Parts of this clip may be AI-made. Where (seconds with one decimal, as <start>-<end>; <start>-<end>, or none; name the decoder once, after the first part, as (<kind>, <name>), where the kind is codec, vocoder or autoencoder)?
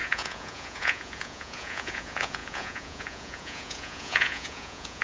0.0-5.0 (vocoder, Vocos)